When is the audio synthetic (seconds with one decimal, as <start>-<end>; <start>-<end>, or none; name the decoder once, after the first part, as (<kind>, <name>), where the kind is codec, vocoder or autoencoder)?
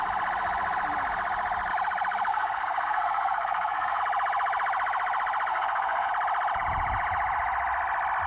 2.3-4.0 (codec, SNAC); 5.5-6.1